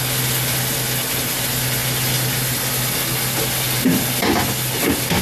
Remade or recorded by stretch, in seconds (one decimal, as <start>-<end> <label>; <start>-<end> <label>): 0.0-5.2 recorded